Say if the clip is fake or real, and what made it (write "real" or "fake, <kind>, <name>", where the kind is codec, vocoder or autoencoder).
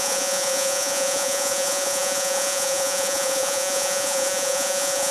fake, vocoder, Vocos